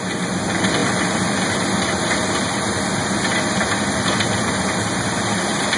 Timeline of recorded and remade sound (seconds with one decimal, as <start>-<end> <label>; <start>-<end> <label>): 0.0-5.8 recorded

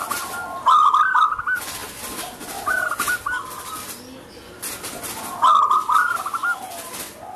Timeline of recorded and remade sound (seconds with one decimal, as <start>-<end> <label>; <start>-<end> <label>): 0.0-7.4 recorded